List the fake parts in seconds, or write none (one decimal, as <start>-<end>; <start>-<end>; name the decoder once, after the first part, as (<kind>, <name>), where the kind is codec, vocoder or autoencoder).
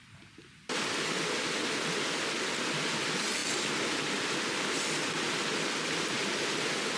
none